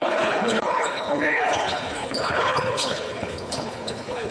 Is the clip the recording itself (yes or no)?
no